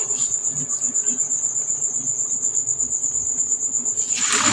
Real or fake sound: real